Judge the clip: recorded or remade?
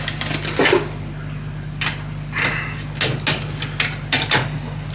recorded